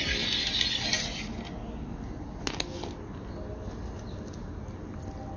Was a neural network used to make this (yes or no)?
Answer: no